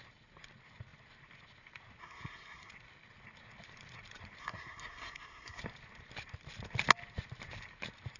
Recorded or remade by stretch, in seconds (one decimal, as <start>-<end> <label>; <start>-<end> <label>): 0.0-2.0 recorded; 2.0-2.7 remade; 2.7-4.4 recorded; 4.4-5.6 remade; 5.6-8.2 recorded